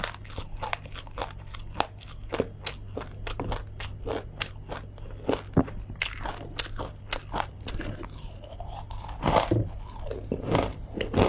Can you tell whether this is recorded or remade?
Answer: recorded